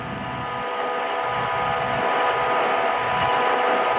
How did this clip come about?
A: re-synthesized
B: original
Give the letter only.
B